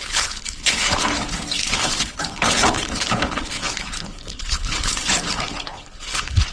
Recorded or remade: remade